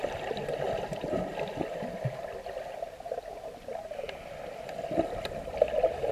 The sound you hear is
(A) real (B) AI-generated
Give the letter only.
A